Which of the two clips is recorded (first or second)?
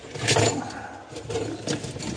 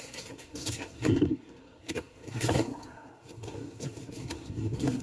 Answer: first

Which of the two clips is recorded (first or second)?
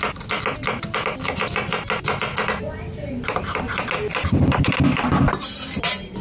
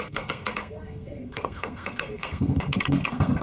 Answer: first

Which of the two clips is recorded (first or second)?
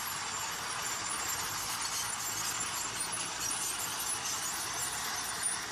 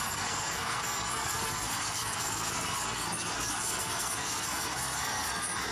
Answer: first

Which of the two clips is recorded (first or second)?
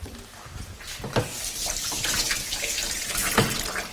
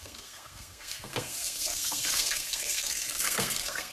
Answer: first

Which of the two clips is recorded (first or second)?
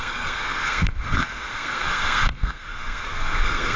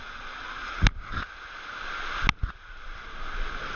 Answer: second